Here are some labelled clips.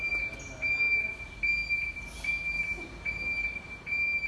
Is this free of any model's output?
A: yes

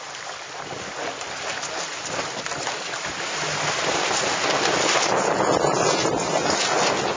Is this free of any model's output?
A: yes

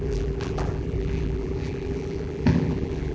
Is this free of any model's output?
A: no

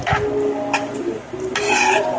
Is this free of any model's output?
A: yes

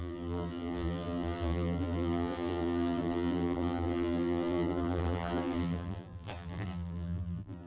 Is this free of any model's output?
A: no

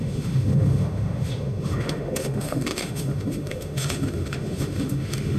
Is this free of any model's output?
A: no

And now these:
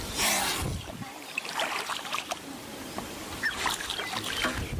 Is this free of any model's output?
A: yes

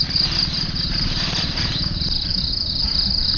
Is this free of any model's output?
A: no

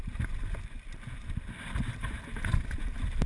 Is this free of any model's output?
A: no